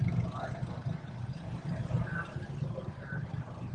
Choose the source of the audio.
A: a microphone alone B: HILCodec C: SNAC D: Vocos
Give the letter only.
A